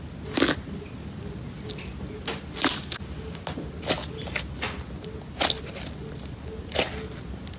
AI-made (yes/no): no